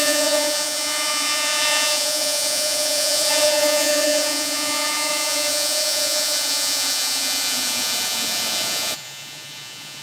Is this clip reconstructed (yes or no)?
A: yes